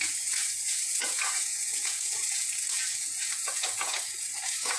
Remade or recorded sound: remade